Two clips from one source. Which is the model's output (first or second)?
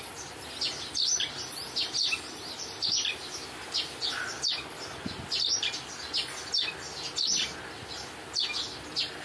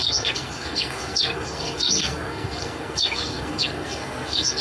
second